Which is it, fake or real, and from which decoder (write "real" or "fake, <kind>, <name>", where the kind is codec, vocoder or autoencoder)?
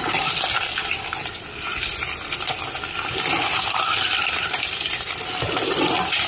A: fake, vocoder, BigVGAN v2